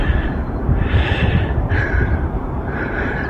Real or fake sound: fake